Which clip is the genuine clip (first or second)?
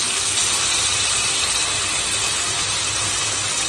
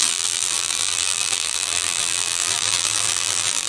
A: first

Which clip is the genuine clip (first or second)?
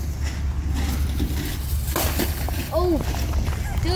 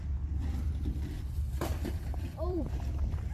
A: first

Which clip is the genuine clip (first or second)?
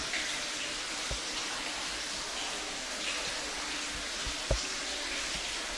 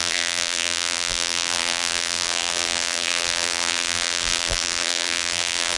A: first